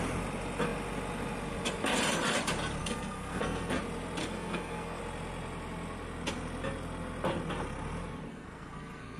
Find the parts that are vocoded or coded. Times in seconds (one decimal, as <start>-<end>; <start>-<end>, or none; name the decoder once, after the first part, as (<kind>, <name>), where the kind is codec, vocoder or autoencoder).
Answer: 2.8-3.8 (codec, SNAC); 4.2-5.0; 8.3-9.2